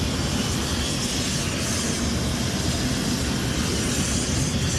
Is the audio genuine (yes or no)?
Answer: yes